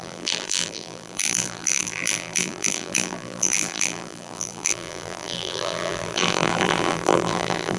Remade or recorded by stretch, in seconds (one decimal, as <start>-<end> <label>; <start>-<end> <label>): 0.0-7.8 remade